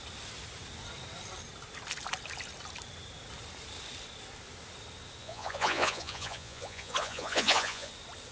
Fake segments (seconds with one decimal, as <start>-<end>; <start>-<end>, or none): 5.2-7.9